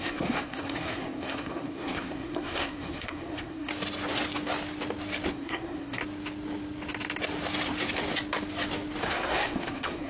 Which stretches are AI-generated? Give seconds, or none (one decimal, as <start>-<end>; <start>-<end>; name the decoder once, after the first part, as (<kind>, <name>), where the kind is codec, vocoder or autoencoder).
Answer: 0.0-3.7 (codec, SNAC); 5.3-6.0; 9.0-10.1